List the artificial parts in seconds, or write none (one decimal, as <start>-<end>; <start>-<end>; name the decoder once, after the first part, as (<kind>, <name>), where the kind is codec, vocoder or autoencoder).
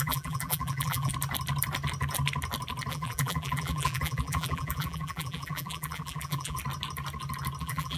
0.0-1.1 (vocoder, BigVGAN v2); 2.9-6.6; 7.6-8.0